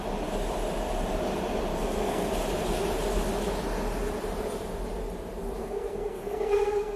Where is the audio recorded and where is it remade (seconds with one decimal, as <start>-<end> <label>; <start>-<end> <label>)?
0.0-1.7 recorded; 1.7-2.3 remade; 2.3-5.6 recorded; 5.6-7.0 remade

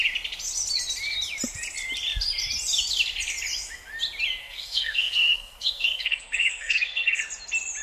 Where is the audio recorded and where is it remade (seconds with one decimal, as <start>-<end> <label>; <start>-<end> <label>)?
0.0-4.4 recorded; 4.4-7.2 remade; 7.2-7.8 recorded

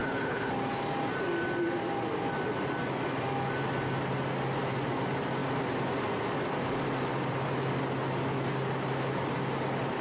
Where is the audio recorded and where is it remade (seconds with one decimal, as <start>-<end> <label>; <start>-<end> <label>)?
0.0-0.5 remade; 0.5-10.0 recorded

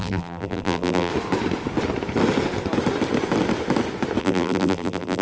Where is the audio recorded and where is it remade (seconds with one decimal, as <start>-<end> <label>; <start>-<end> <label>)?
0.0-1.1 remade; 1.1-4.2 recorded; 4.2-5.2 remade

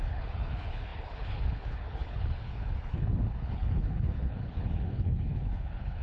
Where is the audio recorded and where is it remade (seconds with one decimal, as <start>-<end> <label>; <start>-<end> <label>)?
0.0-6.0 remade